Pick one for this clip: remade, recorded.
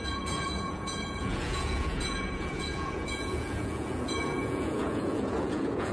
remade